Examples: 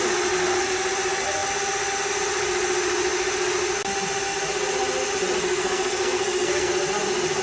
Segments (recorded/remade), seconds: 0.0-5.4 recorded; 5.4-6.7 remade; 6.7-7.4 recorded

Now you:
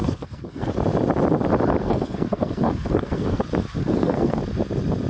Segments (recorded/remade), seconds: 0.0-0.7 remade; 0.7-1.8 recorded; 1.8-3.4 remade; 3.4-3.8 recorded; 3.8-4.4 remade; 4.4-5.1 recorded

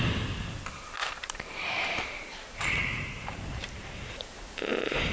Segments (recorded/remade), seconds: 0.0-1.0 recorded; 1.0-4.1 remade; 4.1-5.1 recorded